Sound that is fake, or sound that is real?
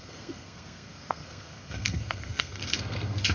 fake